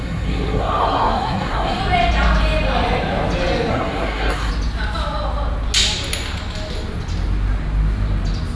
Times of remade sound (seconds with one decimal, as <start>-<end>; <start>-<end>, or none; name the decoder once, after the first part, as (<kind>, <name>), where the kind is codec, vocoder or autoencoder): 0.0-1.8 (codec, SNAC); 3.7-4.5